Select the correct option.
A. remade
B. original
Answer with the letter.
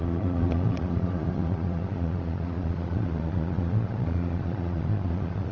A